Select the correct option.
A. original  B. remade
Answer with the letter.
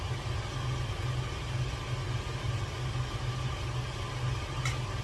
A